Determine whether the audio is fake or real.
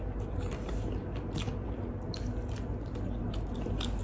real